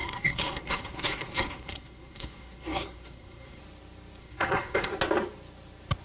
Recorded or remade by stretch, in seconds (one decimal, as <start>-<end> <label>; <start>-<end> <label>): 0.0-3.6 remade; 3.6-4.2 recorded; 4.2-4.9 remade; 4.9-6.0 recorded